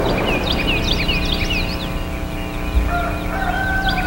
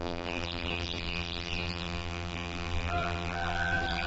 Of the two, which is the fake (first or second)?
second